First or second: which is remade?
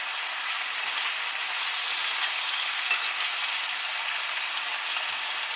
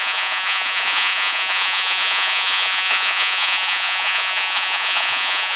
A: second